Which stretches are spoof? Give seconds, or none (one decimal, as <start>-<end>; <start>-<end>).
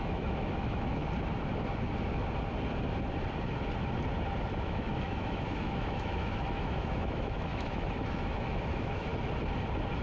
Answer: 0.0-1.0; 4.6-9.1